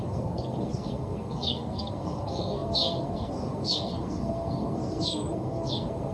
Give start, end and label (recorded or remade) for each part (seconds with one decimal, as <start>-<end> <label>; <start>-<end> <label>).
0.0-6.1 remade

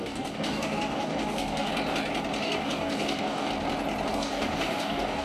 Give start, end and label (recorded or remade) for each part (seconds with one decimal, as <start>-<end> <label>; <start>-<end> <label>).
0.0-1.7 remade; 1.7-2.4 recorded; 2.4-3.5 remade; 3.5-4.1 recorded; 4.1-5.2 remade